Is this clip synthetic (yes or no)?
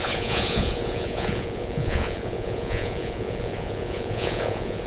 yes